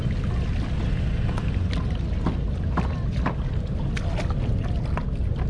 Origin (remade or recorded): recorded